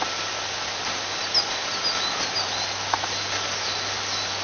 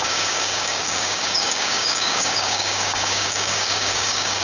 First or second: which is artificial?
second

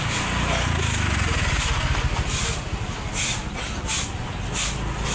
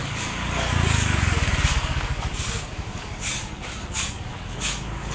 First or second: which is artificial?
second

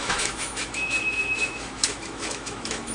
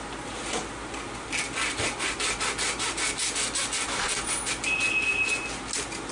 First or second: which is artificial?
first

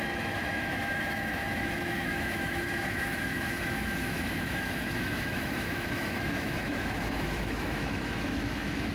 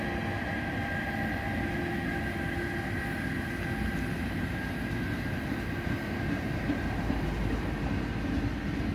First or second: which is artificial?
first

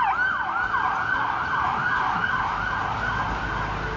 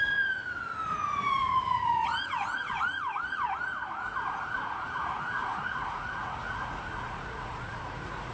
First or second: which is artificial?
second